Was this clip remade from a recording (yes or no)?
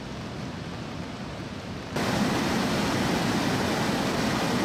no